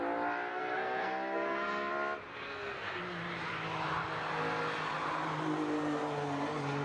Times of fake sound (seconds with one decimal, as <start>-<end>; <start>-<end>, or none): 0.5-1.9; 2.3-3.0